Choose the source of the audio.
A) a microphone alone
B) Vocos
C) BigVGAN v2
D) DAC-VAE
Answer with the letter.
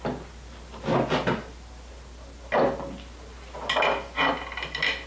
A